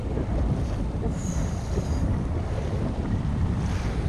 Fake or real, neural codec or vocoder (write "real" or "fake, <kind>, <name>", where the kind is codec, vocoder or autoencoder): real